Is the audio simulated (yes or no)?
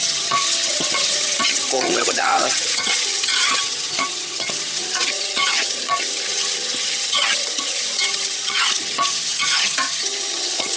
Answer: yes